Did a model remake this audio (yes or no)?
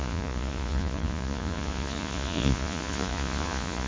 yes